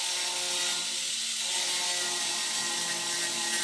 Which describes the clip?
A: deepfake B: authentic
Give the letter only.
B